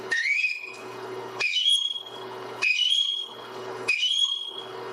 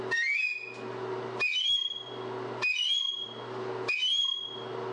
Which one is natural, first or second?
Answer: second